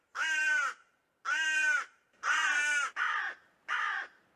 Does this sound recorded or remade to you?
remade